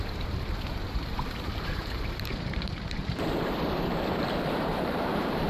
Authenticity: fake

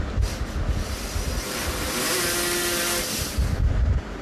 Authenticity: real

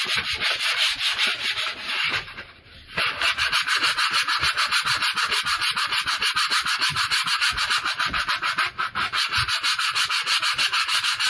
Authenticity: fake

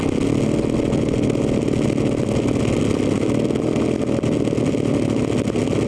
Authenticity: real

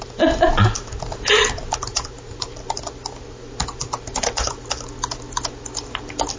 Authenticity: real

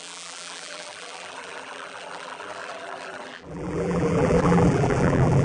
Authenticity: fake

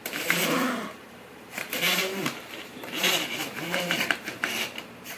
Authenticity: fake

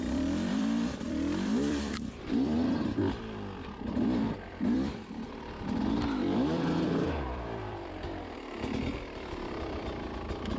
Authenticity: fake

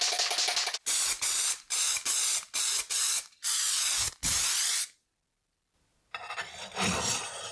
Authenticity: real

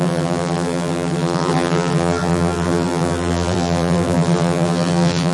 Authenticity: fake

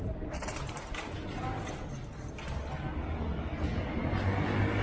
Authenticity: real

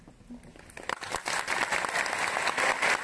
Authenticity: real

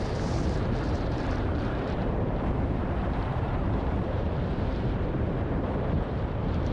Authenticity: fake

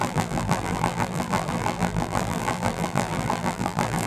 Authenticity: fake